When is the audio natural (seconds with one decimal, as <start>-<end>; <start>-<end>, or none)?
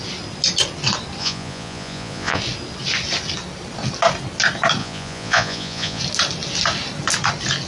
0.0-1.2; 2.4-4.8; 6.0-7.7